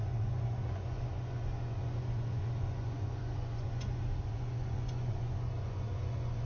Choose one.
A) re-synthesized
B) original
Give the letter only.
A